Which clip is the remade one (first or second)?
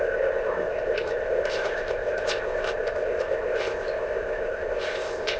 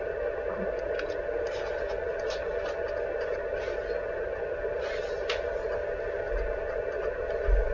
first